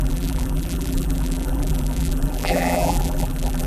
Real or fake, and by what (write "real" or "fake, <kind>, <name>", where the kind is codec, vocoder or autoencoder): fake, vocoder, BigVGAN v2